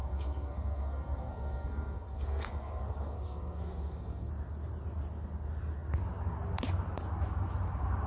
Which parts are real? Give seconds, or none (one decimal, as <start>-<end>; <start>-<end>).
4.3-8.1

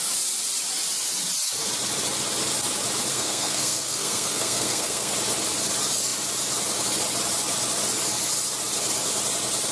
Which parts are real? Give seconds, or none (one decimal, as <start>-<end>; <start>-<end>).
0.0-3.1; 5.1-9.7

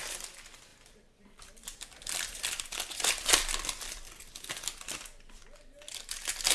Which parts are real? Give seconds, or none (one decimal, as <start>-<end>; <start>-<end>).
0.0-0.7; 4.3-6.5

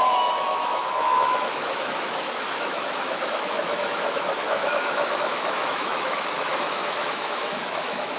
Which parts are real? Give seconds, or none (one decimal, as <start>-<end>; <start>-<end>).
none

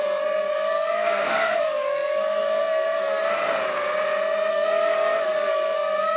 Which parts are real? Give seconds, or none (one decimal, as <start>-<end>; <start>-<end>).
3.2-4.5

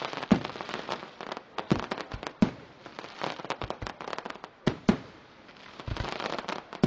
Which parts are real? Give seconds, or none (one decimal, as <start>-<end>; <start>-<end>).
0.0-6.9

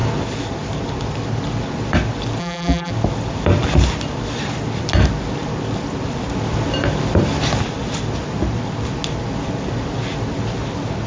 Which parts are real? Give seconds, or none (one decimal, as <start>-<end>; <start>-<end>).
0.0-2.4; 2.9-11.1

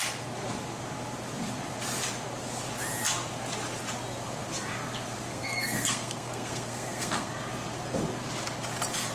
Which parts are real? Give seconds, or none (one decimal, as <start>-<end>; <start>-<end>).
0.0-5.3; 7.3-9.1